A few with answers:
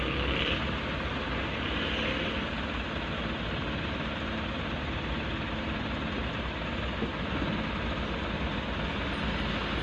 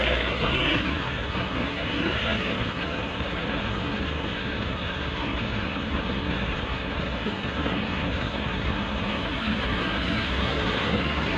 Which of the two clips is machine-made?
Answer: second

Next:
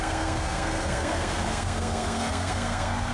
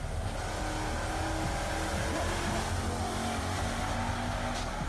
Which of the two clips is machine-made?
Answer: first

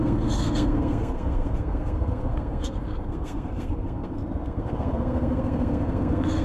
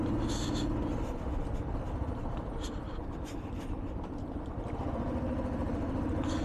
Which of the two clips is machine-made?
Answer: first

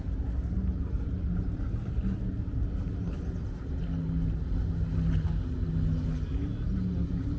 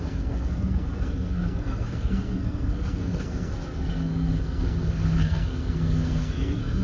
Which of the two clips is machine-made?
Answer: second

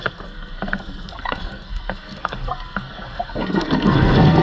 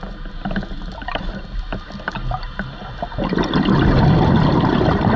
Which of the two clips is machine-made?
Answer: first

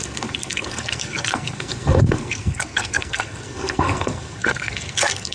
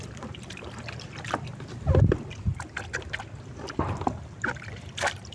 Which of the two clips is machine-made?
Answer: first